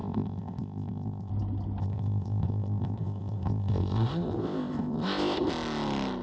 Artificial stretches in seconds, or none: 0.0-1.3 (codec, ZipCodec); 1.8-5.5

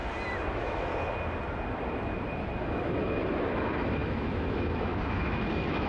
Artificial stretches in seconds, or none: 0.5-0.9 (autoencoder, DAC-VAE); 2.6-5.9

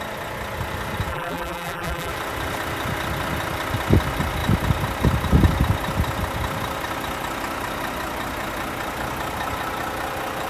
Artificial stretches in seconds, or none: 1.1-2.1 (vocoder, BigVGAN v2)

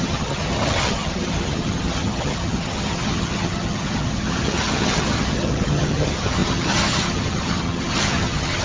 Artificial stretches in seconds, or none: 0.0-8.6 (vocoder, HiFi-GAN)

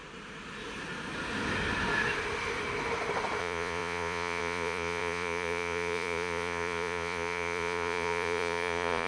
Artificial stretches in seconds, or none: 3.4-9.1 (vocoder, Vocos)

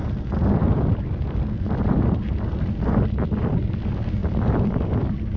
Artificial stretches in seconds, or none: none

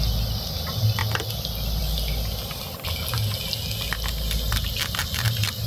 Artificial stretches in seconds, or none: none

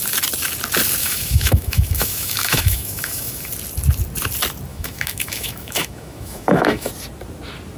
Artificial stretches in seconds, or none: 1.0-3.5 (autoencoder, DAC-VAE); 4.7-6.9